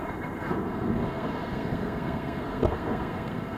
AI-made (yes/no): yes